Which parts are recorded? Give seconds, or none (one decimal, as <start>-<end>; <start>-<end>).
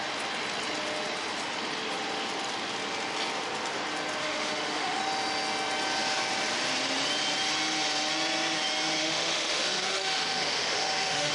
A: 0.0-4.2; 5.0-9.0